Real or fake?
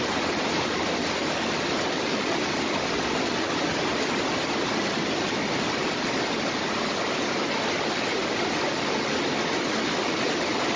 real